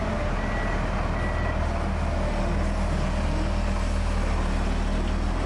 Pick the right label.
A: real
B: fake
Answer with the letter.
A